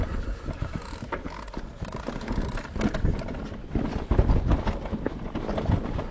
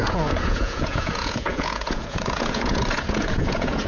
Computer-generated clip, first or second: second